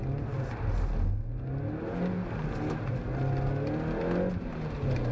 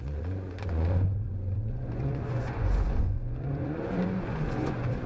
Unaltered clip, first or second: first